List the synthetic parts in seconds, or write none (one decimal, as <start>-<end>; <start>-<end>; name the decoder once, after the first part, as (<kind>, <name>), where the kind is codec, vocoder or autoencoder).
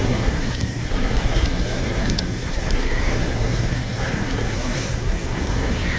0.0-6.0 (codec, SNAC)